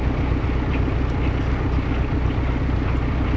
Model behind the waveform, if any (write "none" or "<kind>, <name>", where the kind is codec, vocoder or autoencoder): none